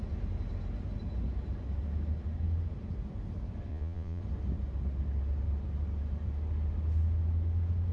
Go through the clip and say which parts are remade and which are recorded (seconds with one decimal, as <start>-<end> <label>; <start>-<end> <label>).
0.0-3.7 recorded; 3.7-4.2 remade; 4.2-7.9 recorded